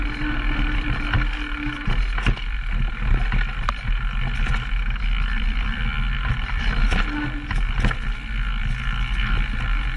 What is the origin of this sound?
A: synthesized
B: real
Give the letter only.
B